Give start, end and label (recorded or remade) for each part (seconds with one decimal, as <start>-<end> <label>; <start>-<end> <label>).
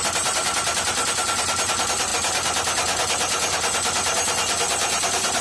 0.0-5.4 recorded